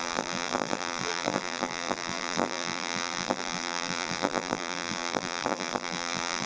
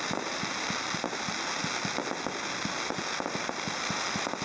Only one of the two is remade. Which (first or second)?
first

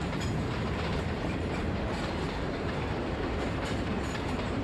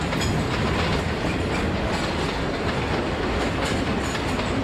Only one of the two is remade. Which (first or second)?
first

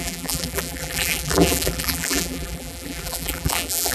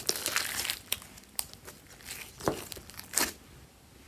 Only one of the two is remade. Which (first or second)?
first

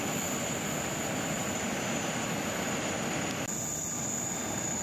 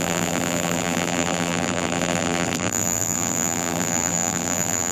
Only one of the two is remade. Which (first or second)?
second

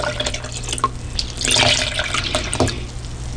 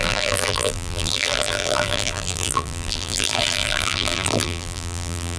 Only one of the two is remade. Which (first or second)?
second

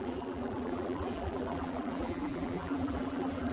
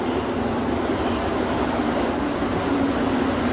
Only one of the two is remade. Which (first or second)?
first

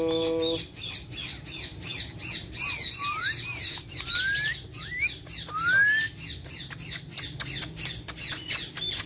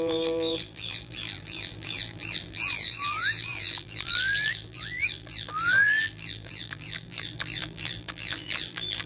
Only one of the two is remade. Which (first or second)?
second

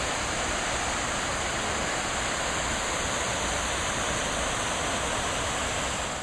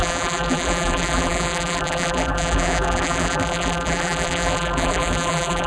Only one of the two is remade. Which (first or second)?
second